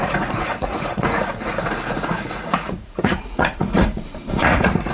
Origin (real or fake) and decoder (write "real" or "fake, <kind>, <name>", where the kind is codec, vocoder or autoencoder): fake, vocoder, Vocos